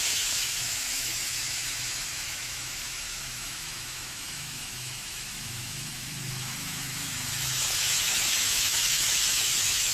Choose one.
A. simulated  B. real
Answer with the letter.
A